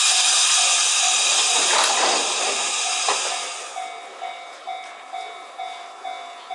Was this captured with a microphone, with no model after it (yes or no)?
yes